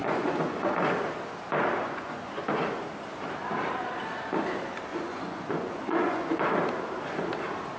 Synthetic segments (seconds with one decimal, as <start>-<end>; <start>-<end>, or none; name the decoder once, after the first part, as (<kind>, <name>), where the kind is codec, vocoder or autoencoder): 0.0-0.7 (vocoder, Vocos); 1.8-2.4; 4.9-6.3